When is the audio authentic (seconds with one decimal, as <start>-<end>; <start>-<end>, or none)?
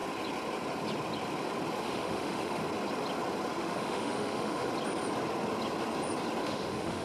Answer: 0.0-1.8; 2.6-3.6; 4.7-6.4